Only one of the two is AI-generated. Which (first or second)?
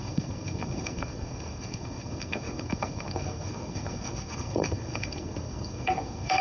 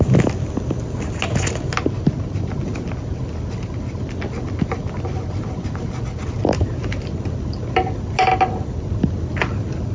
first